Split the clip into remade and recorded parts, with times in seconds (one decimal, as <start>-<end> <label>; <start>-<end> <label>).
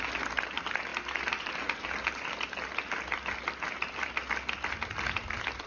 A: 0.0-5.7 recorded